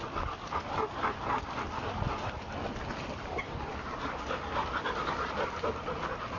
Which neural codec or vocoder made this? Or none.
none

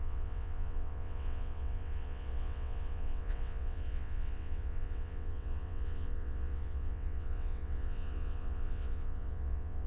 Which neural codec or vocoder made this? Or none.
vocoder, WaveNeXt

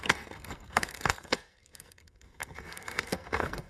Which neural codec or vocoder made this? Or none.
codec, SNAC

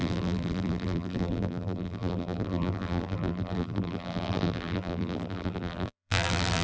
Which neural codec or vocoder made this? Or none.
vocoder, BigVGAN v2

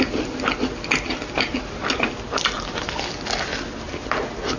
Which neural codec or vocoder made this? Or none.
none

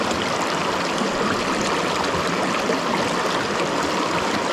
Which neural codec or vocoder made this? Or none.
none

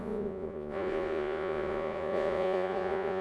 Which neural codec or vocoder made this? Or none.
vocoder, Vocos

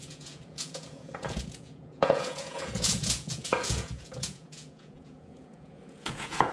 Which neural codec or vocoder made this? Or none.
vocoder, Vocos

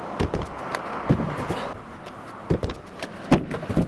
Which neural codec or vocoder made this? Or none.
none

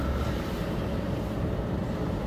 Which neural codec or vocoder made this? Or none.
vocoder, BigVGAN v2